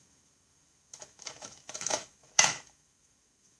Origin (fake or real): fake